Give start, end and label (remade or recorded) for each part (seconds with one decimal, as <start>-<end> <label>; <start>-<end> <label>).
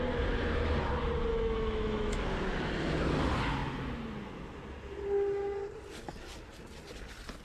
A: 0.0-1.3 recorded; 1.3-2.2 remade; 2.2-7.4 recorded